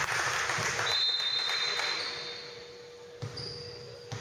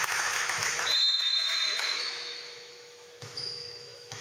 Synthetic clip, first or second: second